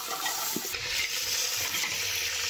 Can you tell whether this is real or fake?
real